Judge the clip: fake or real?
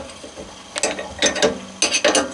real